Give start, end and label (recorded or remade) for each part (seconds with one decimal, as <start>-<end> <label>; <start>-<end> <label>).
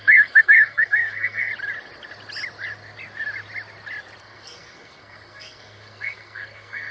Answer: 0.0-1.5 remade; 1.5-4.2 recorded; 4.2-6.9 remade